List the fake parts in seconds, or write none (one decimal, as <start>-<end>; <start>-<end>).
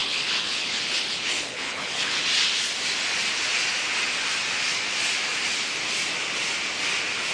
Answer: 0.0-2.2